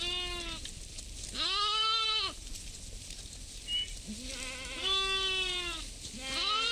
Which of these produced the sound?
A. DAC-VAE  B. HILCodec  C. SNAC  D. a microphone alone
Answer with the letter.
D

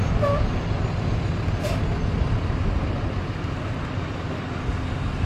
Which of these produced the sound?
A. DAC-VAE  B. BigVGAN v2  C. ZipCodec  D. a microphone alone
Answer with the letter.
D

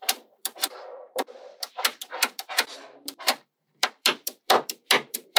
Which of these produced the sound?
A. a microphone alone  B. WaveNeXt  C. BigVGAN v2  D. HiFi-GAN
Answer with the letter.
C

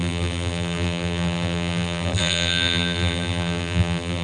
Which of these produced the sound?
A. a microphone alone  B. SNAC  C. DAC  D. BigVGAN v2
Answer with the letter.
D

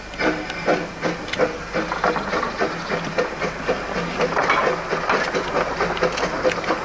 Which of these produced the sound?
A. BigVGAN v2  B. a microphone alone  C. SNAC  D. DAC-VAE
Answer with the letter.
B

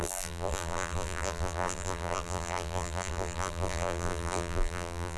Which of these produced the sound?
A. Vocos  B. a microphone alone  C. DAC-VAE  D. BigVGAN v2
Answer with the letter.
D